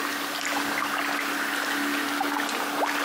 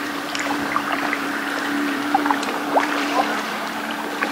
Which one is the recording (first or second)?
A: first